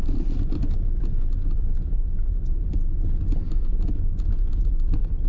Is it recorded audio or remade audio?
recorded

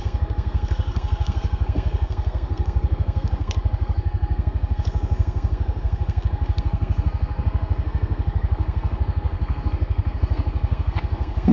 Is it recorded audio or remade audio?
remade